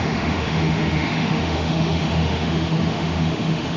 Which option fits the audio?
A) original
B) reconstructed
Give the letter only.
B